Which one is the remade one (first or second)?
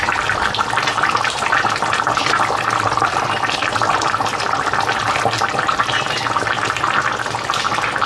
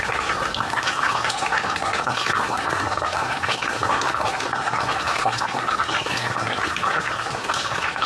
second